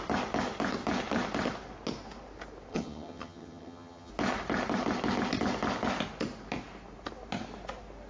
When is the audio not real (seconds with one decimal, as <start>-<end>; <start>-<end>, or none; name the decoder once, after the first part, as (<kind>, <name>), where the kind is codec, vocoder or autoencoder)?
2.7-4.1 (vocoder, HiFi-GAN)